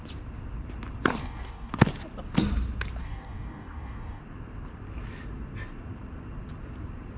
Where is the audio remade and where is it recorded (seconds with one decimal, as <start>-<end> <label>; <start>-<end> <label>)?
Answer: 0.0-1.2 recorded; 1.2-1.7 remade; 1.7-3.0 recorded; 3.0-4.2 remade; 4.2-7.2 recorded